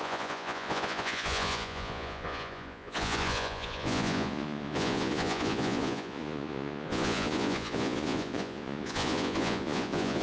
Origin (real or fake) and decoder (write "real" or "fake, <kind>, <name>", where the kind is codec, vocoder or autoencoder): fake, vocoder, Vocos